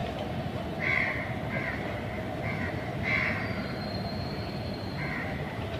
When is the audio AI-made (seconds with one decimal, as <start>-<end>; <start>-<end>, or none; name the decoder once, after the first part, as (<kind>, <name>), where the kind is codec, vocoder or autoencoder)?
3.5-5.8 (vocoder, BigVGAN v2)